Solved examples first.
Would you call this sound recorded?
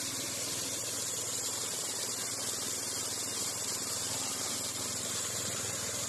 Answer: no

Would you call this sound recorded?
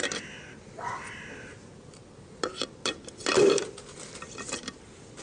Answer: yes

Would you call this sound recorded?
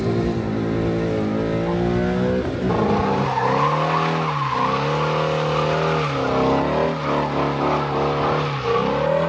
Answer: yes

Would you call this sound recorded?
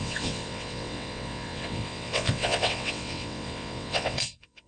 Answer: no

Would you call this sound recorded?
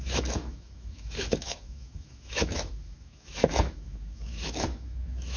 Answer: no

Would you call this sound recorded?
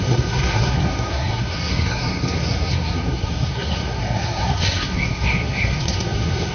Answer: no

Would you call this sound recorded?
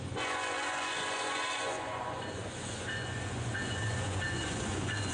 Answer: no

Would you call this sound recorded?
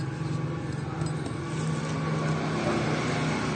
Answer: yes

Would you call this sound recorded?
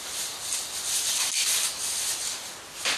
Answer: yes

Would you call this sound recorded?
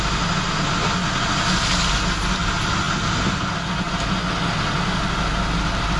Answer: yes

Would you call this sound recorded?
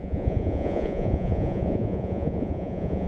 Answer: no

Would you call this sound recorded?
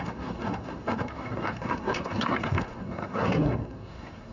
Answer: no